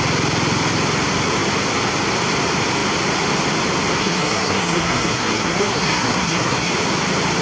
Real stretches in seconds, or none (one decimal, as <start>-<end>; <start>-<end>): 0.0-4.0; 6.7-7.4